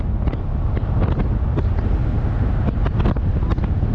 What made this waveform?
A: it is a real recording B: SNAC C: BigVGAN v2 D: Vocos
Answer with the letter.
A